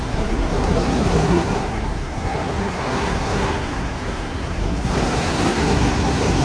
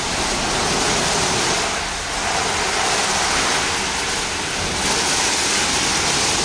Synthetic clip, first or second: first